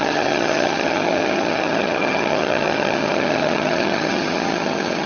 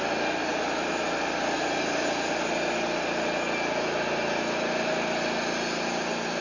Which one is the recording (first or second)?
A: second